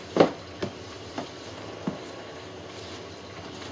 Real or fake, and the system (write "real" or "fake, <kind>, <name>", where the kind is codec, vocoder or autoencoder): real